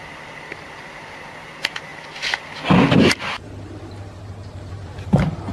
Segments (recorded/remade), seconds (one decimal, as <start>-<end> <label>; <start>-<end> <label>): 0.0-5.5 recorded